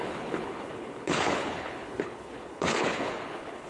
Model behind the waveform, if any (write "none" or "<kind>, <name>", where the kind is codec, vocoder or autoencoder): codec, HILCodec